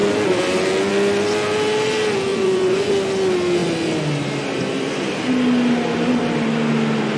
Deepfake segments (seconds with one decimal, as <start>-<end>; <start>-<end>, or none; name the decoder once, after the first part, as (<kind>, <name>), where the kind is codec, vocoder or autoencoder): 2.3-2.9 (vocoder, Vocos)